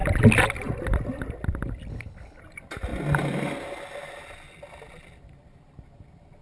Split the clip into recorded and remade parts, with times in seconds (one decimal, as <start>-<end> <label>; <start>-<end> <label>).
0.0-1.9 recorded; 1.9-2.4 remade; 2.4-6.4 recorded